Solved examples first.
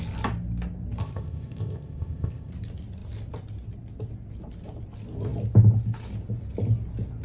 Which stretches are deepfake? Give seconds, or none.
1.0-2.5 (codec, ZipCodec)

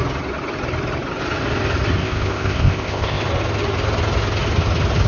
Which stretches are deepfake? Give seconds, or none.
2.0-3.2 (codec, ZipCodec)

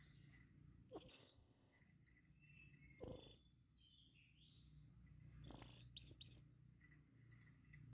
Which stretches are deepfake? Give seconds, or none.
1.1-1.8 (codec, ZipCodec)

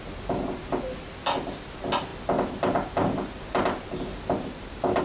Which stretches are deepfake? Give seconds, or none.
none

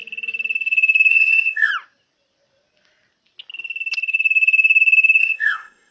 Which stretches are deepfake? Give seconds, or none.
1.1-1.7 (codec, ZipCodec); 5.2-5.9